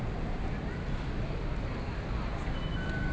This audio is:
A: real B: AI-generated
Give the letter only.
A